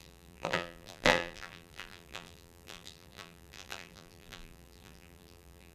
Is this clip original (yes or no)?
no